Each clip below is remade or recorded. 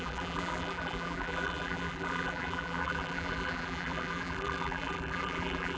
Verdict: remade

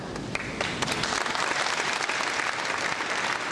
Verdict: recorded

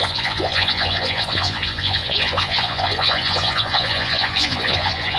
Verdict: remade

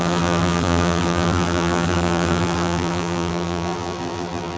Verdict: remade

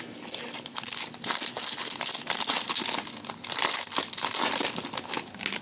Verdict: recorded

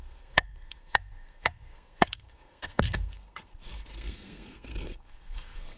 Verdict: remade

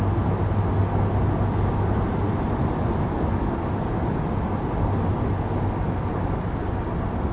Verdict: recorded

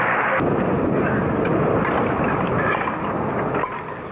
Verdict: recorded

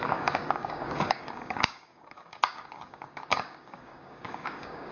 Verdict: remade